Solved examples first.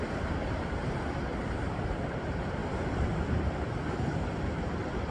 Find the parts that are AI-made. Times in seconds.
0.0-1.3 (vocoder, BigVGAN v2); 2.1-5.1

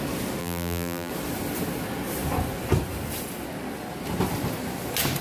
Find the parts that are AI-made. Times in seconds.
0.4-1.1 (vocoder, BigVGAN v2)